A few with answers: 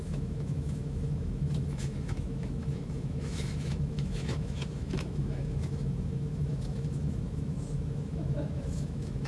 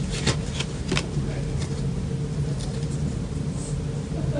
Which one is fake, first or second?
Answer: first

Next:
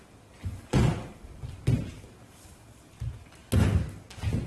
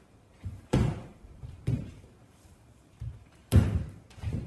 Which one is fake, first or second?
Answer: second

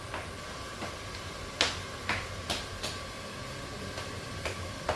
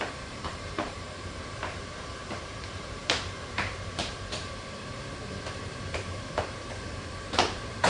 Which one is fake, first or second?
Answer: second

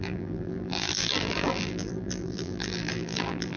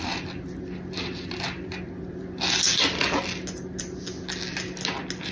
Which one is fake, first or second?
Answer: first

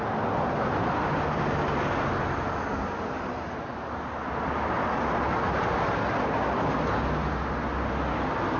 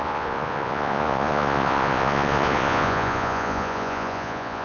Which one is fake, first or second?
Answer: second